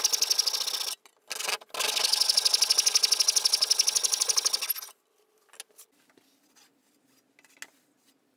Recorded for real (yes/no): yes